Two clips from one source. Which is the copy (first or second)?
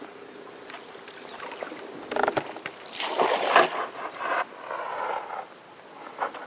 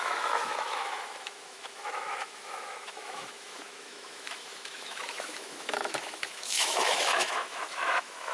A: second